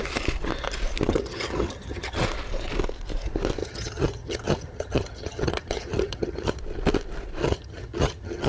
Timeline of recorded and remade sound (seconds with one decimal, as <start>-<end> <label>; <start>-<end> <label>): 0.0-1.1 recorded; 1.1-2.2 remade; 2.2-3.6 recorded; 3.6-6.6 remade; 6.6-7.4 recorded; 7.4-8.5 remade